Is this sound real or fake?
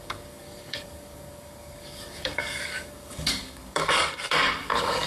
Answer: fake